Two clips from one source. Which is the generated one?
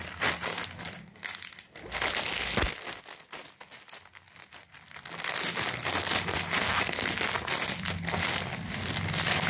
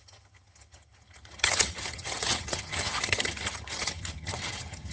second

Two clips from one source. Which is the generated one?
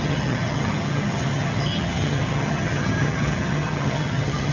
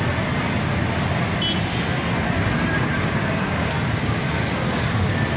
first